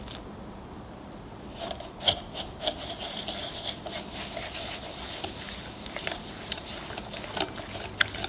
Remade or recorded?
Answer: recorded